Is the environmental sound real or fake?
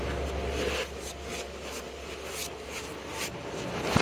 real